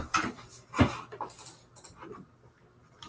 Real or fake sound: real